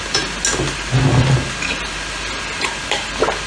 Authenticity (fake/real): real